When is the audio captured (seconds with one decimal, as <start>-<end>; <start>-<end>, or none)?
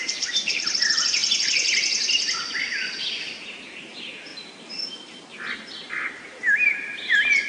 1.2-3.2; 4.3-6.1